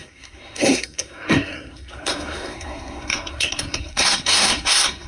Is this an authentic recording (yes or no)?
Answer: no